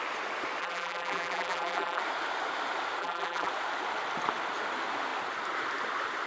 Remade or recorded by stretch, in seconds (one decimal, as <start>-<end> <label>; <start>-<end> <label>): 0.0-0.6 recorded; 0.6-2.0 remade; 2.0-3.0 recorded; 3.0-3.5 remade; 3.5-6.3 recorded